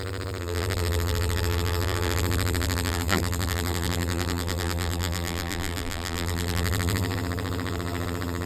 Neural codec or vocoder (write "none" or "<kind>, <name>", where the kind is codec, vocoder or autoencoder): vocoder, BigVGAN v2